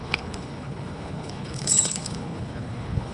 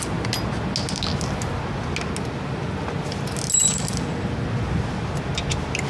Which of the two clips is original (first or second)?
second